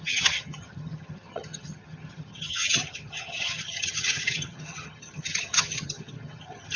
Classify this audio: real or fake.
fake